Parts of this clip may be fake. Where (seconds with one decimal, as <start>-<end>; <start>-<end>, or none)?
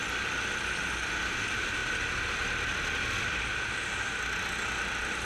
none